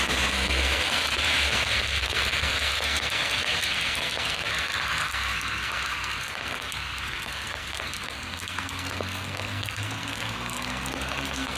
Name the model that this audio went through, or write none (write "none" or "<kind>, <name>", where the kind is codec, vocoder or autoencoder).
codec, SNAC